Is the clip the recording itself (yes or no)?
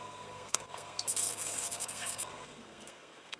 no